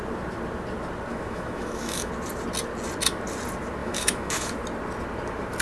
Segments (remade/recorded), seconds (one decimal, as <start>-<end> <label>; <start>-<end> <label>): 0.0-1.1 recorded; 1.1-2.1 remade; 2.1-3.8 recorded; 3.8-4.5 remade; 4.5-5.6 recorded